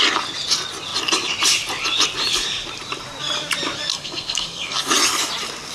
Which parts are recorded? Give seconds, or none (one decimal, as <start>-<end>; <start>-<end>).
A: 0.0-3.9; 4.9-5.7